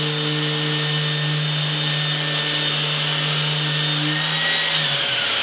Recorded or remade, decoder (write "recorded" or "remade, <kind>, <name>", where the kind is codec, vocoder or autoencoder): recorded